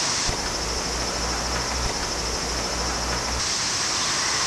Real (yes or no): yes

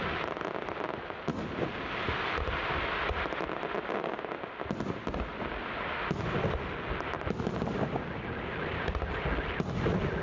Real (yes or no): yes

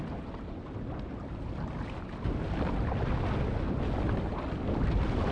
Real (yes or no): yes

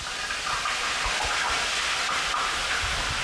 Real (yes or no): yes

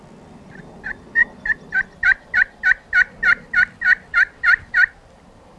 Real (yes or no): yes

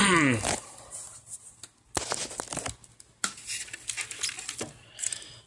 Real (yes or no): yes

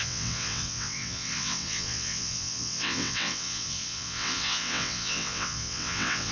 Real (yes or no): no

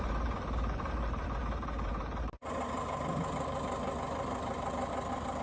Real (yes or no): yes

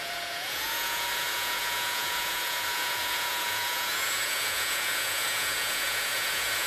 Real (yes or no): no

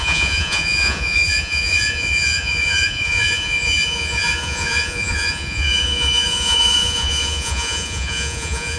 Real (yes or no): no